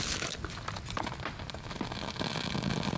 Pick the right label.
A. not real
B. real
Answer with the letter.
B